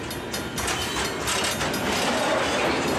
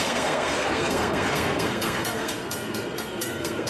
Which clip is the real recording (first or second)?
first